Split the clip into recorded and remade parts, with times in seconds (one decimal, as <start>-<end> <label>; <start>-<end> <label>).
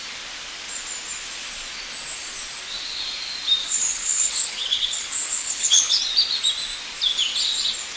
0.0-3.6 recorded; 3.6-6.0 remade; 6.0-8.0 recorded